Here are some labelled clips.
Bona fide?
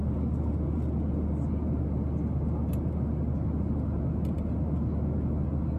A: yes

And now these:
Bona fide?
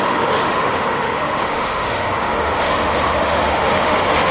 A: no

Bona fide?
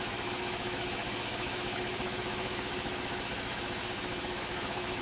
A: no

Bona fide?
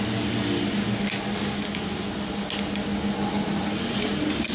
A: yes